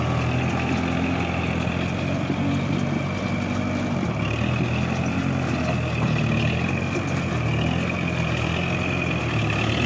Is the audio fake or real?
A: real